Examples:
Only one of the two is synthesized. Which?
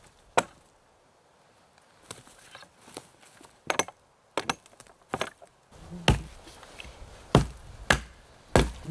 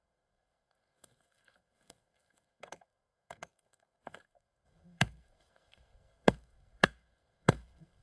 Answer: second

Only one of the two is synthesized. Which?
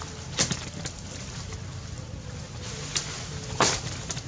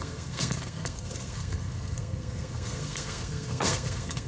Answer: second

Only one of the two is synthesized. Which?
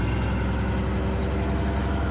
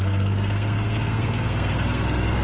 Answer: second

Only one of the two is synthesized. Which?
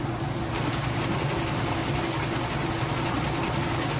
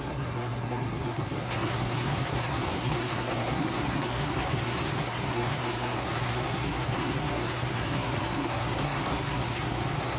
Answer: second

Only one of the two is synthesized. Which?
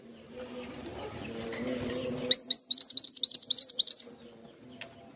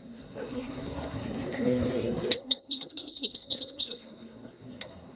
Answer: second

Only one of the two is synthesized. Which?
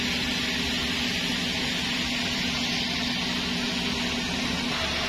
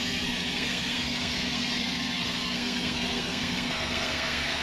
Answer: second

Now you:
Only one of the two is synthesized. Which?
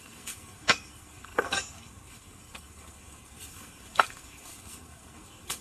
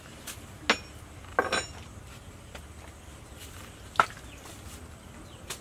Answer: first